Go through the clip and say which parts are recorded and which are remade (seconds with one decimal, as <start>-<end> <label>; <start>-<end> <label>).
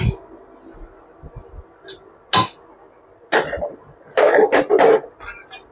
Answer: 0.0-5.7 recorded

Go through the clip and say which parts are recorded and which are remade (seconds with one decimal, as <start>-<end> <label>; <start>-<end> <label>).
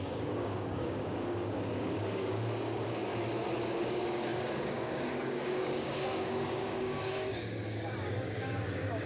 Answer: 0.0-3.1 remade; 3.1-3.8 recorded; 3.8-9.1 remade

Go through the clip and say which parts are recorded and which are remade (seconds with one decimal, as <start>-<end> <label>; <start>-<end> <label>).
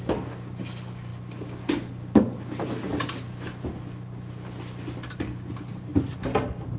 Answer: 0.0-6.8 recorded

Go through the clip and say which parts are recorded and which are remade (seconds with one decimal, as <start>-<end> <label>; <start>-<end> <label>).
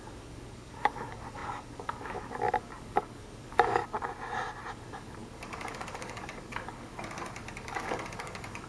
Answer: 0.0-3.8 remade; 3.8-4.7 recorded; 4.7-6.9 remade; 6.9-7.5 recorded; 7.5-8.7 remade